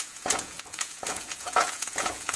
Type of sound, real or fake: fake